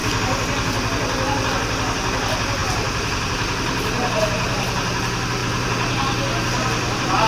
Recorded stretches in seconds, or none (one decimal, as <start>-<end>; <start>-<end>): 0.0-2.6; 5.0-5.4